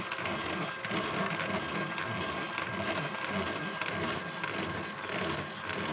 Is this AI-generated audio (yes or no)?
no